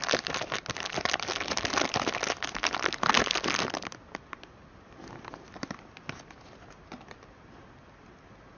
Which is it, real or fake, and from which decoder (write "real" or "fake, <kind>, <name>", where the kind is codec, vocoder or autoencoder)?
real